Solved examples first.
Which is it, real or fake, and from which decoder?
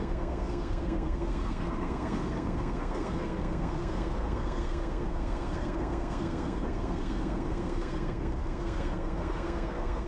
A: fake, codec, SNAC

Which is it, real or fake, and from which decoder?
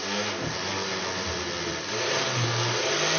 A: real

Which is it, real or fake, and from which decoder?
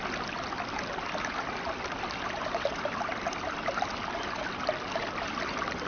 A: real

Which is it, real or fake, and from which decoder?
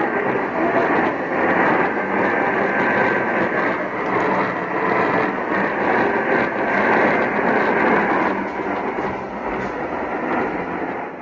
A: real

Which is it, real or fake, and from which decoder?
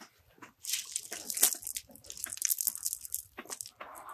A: real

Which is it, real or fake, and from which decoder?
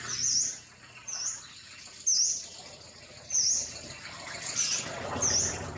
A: real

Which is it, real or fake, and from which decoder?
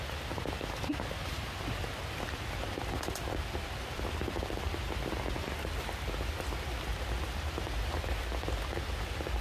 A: real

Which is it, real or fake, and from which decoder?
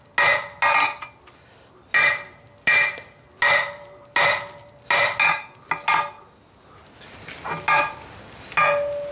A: real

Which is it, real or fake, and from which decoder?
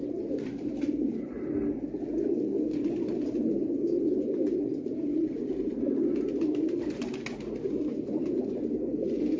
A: real